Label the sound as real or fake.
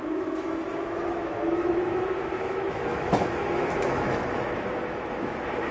fake